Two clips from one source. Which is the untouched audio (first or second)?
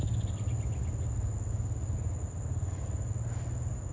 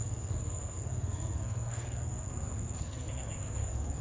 first